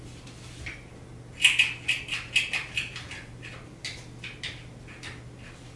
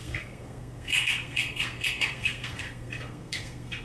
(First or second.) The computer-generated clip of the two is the second